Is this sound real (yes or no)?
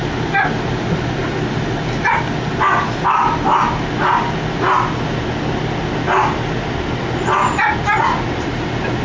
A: yes